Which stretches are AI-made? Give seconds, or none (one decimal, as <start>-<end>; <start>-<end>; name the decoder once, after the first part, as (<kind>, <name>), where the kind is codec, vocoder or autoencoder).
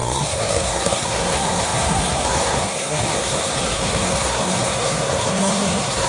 0.0-6.1 (codec, SNAC)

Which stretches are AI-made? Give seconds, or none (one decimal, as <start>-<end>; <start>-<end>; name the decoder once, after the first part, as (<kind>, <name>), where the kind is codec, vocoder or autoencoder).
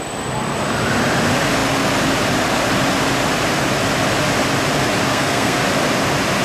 5.1-5.6 (codec, SNAC)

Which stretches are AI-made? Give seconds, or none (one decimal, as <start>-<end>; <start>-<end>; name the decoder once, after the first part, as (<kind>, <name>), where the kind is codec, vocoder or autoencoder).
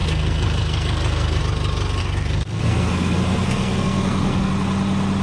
0.0-1.4 (codec, SNAC); 2.0-4.5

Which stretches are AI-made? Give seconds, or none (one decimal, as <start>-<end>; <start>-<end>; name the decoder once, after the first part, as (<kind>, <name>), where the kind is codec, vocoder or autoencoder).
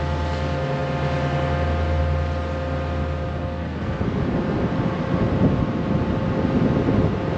3.4-4.2 (codec, SNAC)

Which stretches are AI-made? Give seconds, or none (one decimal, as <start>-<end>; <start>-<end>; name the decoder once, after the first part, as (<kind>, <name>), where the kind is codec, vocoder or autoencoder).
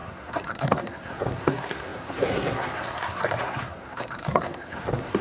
0.0-5.2 (codec, SNAC)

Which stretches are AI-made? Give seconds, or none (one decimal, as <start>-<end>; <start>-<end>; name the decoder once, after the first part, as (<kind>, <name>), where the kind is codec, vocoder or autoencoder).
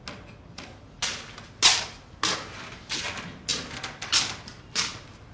none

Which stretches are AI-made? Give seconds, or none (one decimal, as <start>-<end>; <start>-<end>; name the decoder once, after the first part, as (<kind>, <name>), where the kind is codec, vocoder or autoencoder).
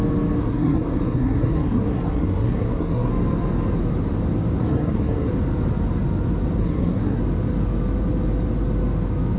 0.4-3.1 (codec, SNAC); 4.6-5.3; 6.6-7.2